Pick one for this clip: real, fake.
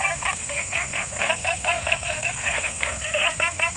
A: fake